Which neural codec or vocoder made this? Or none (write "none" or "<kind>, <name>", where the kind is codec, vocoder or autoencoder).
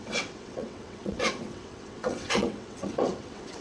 vocoder, WaveNeXt